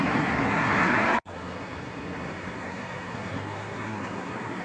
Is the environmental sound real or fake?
fake